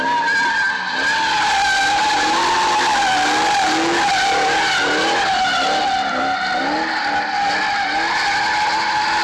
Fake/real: real